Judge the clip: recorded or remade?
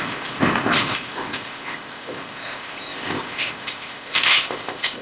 remade